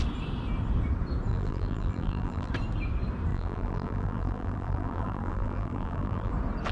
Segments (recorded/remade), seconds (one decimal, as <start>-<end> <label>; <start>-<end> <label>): 0.0-1.3 recorded; 1.3-2.5 remade; 2.5-3.3 recorded; 3.3-6.3 remade; 6.3-6.7 recorded